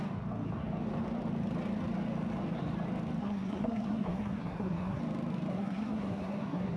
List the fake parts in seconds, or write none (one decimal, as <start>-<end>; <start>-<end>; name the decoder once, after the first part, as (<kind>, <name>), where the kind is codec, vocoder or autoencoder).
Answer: 3.2-5.0 (codec, SNAC); 5.5-6.8